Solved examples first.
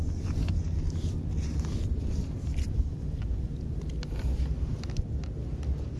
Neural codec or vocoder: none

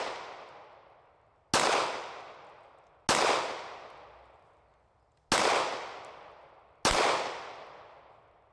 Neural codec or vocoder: none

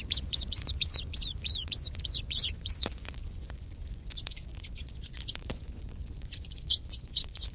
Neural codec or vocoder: vocoder, Vocos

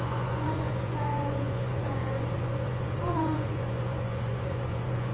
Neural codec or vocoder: vocoder, Vocos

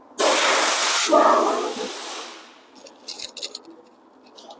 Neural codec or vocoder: none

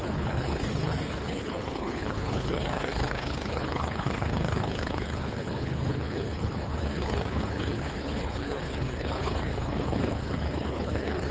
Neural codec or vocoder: codec, HILCodec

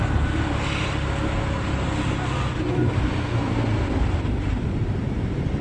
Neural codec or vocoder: none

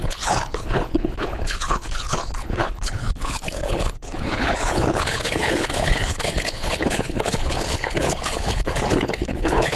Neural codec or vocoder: codec, HILCodec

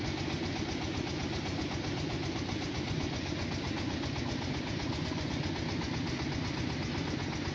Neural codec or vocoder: vocoder, Vocos